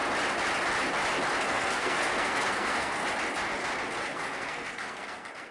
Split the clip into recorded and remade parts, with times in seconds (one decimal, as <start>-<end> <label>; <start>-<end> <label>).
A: 0.0-1.5 recorded; 1.5-3.0 remade; 3.0-4.0 recorded; 4.0-5.5 remade